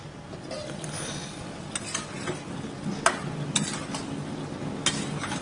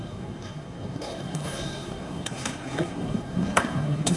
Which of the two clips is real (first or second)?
first